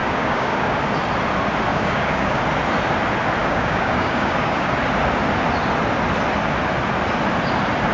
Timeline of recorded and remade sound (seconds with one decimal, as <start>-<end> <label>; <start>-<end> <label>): 0.0-0.8 remade; 0.8-1.7 recorded; 1.7-2.4 remade; 2.4-3.4 recorded; 3.4-4.7 remade; 4.7-7.9 recorded